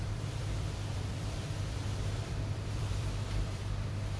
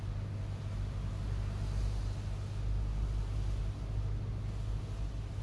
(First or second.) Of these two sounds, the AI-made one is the first